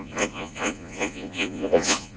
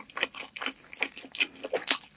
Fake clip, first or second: first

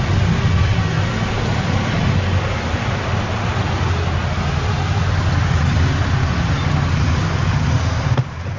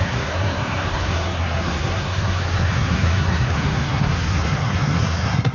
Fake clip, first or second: second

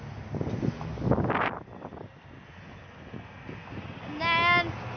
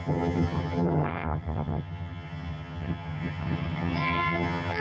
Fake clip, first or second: second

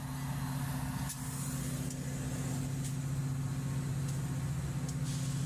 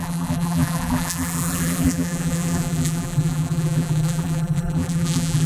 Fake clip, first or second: second